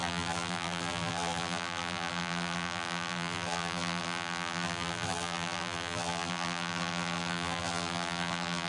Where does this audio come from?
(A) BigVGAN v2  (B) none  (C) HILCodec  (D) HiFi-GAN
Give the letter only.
A